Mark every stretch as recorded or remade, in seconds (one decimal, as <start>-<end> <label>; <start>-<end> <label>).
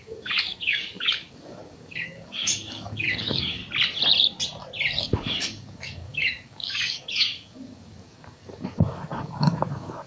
0.0-3.6 remade; 3.6-5.0 recorded; 5.0-10.1 remade